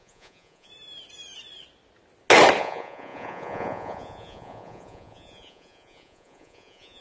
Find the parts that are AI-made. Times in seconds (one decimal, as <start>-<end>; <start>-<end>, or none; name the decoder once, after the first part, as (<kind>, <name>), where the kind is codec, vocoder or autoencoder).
0.0-0.7 (vocoder, Vocos); 2.6-7.0